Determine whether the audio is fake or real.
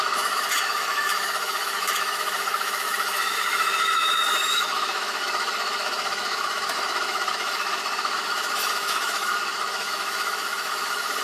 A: fake